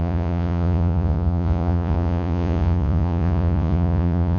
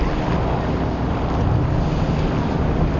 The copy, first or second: first